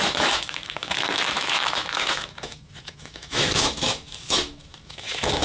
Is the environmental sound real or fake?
fake